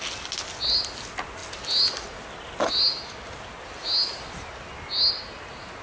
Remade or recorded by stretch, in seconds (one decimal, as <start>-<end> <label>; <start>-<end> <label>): 0.0-5.8 recorded

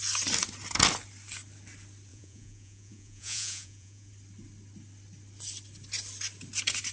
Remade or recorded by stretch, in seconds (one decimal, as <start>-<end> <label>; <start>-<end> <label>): 0.0-2.1 recorded; 2.1-4.1 remade; 4.1-6.9 recorded

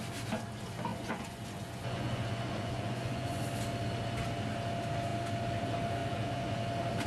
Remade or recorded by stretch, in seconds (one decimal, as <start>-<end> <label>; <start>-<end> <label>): 0.0-0.9 recorded; 0.9-3.4 remade; 3.4-6.0 recorded; 6.0-6.6 remade; 6.6-7.1 recorded

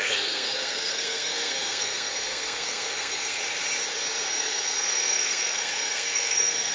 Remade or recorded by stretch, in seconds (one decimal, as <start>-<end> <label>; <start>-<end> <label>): 0.0-3.4 remade; 3.4-4.3 recorded; 4.3-6.7 remade